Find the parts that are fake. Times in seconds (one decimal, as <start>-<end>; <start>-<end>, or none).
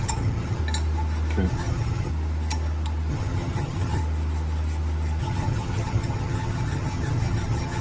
0.0-0.6; 1.5-2.1; 3.1-4.0; 5.2-7.8